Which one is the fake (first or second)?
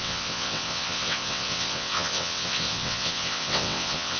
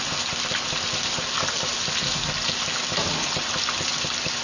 first